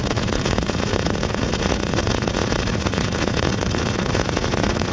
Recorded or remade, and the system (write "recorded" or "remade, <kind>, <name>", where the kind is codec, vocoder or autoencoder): remade, vocoder, Vocos